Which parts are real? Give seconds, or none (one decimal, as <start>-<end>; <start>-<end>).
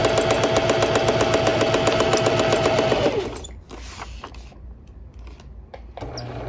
0.0-1.5; 5.4-6.5